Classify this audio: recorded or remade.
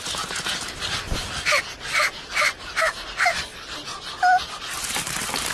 recorded